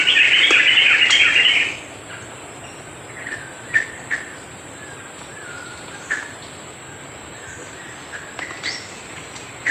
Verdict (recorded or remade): recorded